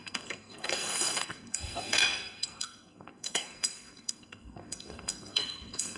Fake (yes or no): yes